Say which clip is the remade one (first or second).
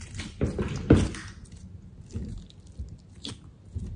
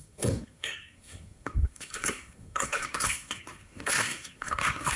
second